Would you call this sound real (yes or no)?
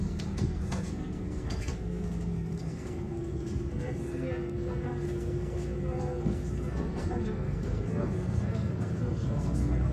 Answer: no